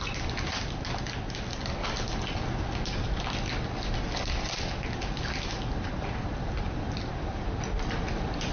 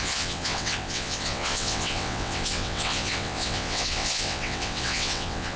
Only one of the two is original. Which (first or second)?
first